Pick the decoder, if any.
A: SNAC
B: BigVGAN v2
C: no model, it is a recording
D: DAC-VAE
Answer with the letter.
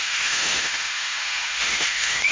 D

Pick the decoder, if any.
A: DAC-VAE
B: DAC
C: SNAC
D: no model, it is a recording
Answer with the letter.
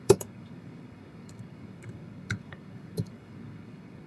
B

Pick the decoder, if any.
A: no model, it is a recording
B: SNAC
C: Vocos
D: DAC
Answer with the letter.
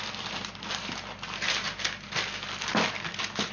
A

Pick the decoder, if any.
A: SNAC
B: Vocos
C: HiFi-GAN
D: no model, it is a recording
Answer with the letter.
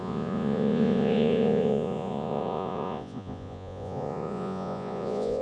B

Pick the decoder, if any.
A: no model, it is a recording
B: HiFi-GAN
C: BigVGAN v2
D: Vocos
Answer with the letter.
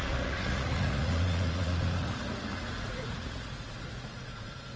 D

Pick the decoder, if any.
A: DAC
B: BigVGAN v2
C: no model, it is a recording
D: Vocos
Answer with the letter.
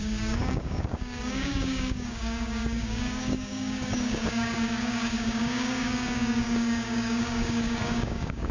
A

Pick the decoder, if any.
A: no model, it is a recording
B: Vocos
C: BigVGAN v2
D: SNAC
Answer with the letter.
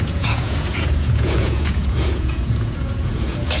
B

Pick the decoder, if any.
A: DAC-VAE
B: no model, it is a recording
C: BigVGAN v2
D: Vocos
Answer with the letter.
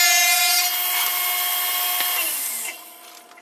B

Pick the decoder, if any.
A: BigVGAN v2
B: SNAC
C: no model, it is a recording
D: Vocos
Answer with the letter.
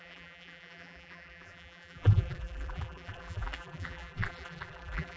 A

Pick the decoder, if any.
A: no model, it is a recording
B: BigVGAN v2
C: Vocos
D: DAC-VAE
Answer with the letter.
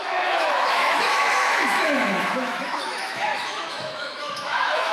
D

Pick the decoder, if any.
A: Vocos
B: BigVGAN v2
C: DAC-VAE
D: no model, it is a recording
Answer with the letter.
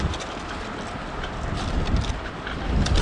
B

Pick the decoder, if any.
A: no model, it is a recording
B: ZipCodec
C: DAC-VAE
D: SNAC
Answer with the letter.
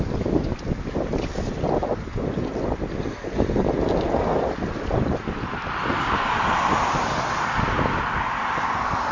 A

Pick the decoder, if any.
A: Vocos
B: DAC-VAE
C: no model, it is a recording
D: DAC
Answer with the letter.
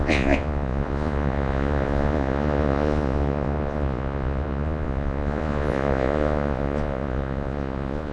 A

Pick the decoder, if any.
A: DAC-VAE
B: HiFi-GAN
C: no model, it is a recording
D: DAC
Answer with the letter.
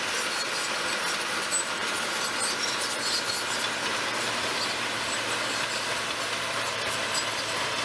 C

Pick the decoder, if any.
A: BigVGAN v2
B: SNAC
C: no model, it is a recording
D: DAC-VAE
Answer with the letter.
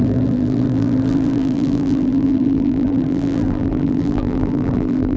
A